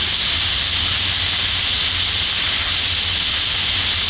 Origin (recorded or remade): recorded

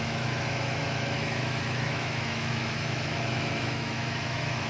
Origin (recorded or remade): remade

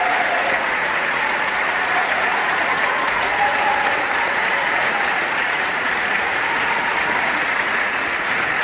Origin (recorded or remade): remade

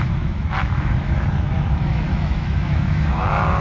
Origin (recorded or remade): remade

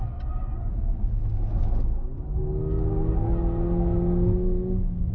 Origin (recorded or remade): recorded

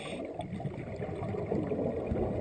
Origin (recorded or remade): recorded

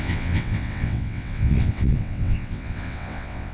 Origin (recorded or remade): remade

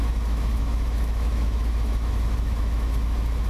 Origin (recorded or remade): remade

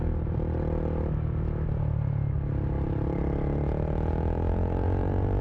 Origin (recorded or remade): recorded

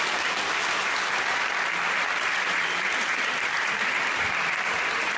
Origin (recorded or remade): recorded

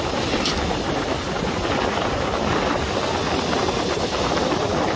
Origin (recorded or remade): recorded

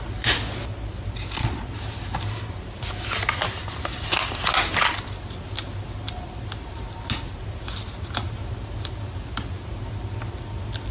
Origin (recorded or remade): recorded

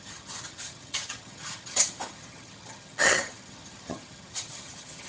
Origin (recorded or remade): remade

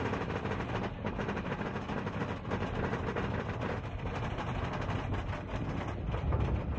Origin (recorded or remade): remade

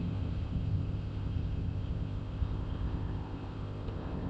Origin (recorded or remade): remade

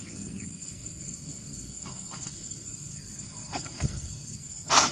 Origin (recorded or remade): remade